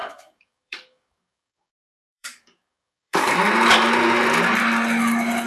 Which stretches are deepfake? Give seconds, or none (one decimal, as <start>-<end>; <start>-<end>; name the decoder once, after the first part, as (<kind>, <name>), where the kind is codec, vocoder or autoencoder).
0.0-3.3 (codec, DAC)